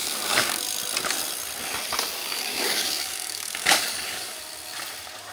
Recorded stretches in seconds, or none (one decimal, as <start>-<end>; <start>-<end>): 0.6-2.2; 4.4-5.3